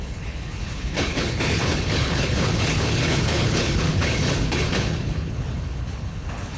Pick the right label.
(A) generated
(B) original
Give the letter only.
A